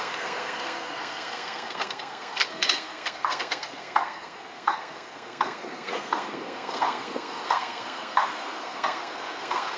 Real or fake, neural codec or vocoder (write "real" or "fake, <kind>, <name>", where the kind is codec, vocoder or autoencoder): fake, codec, SNAC